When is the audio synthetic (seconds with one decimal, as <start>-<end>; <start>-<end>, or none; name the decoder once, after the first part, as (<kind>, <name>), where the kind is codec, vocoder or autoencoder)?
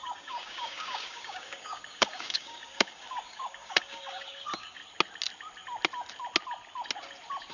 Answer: 0.0-4.8 (codec, DAC)